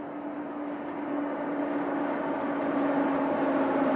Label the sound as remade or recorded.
recorded